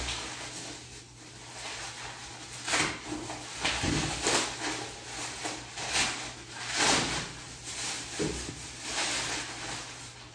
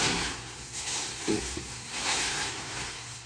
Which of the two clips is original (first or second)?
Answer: first